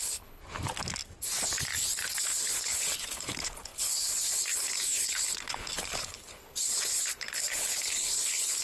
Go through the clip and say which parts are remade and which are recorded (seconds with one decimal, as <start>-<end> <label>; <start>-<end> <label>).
0.0-0.4 remade; 0.4-2.2 recorded; 2.2-8.6 remade